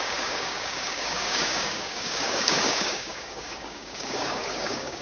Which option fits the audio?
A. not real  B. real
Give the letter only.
A